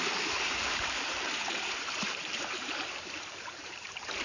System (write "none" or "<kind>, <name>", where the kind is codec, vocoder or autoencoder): vocoder, BigVGAN v2